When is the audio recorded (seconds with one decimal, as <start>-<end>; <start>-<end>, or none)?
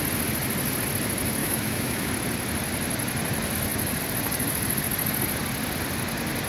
0.0-1.4; 2.1-6.5